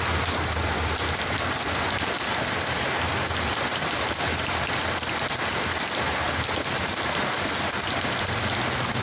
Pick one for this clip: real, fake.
real